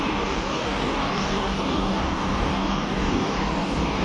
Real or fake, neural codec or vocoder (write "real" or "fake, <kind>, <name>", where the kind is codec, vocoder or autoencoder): fake, codec, DAC